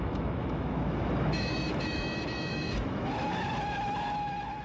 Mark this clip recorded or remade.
remade